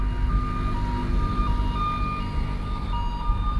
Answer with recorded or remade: recorded